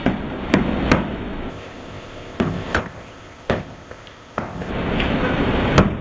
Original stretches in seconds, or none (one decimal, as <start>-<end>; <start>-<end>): 0.0-1.5; 4.7-6.0